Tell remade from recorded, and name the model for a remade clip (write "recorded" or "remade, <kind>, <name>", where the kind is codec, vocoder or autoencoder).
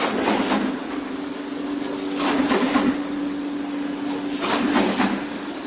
recorded